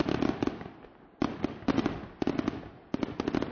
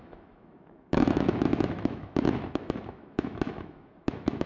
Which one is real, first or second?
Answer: first